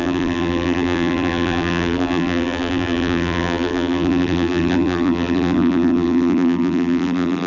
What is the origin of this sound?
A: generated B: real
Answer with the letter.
A